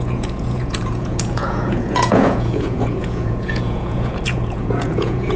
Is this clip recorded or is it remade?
remade